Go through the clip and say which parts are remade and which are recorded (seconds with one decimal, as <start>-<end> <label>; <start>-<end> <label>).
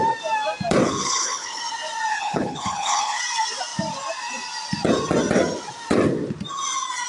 0.0-0.8 recorded; 0.8-1.6 remade; 1.6-2.1 recorded; 2.1-3.2 remade; 3.2-7.1 recorded